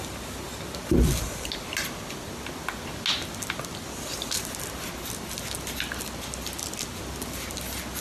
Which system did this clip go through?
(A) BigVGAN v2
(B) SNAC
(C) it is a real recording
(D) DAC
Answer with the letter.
C